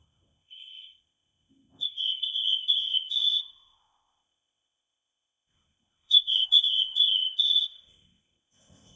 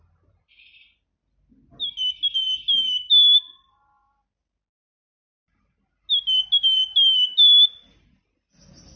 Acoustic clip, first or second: second